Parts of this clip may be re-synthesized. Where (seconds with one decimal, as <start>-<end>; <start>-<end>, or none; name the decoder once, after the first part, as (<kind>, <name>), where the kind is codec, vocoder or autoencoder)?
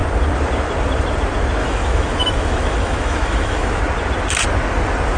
1.6-3.8 (autoencoder, DAC-VAE)